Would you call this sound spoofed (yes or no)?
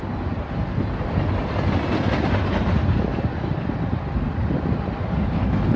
no